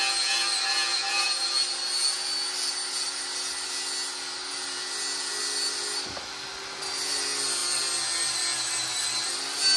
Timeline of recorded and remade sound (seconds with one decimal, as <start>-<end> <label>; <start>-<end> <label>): 0.0-9.8 recorded